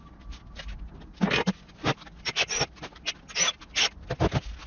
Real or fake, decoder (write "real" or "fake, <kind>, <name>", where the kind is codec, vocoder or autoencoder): real